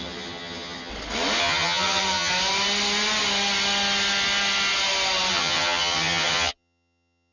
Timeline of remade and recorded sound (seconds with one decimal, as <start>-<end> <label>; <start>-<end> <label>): 0.0-0.9 remade; 0.9-1.4 recorded; 1.4-2.3 remade; 2.3-5.3 recorded; 5.3-7.3 remade